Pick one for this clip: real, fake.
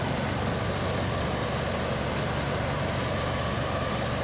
real